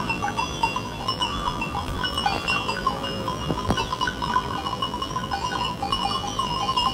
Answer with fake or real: fake